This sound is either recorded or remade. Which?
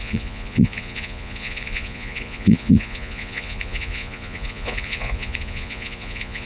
remade